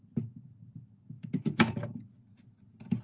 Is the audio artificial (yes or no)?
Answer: no